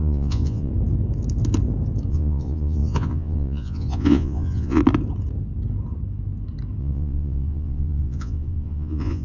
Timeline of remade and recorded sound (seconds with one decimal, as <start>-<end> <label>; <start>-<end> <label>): 0.0-0.7 remade; 0.7-2.1 recorded; 2.1-4.8 remade; 4.8-6.8 recorded; 6.8-9.2 remade